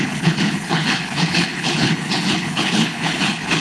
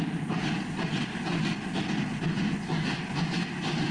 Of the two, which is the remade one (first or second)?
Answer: first